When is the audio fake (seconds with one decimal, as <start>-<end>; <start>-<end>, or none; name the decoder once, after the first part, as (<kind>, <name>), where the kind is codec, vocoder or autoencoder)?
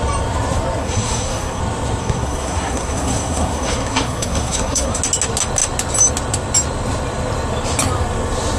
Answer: 0.8-1.6 (codec, SNAC); 2.0-5.0